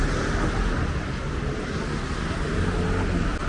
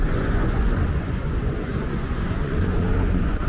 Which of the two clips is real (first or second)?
first